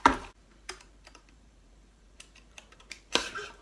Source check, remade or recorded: remade